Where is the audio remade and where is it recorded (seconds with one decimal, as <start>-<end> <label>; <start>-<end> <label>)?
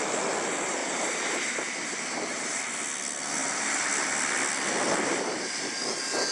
0.0-0.8 recorded; 0.8-2.6 remade; 2.6-5.1 recorded; 5.1-5.7 remade; 5.7-6.3 recorded